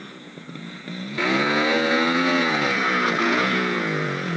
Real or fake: fake